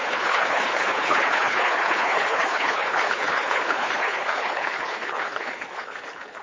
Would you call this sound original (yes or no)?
no